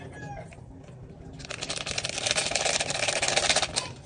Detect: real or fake real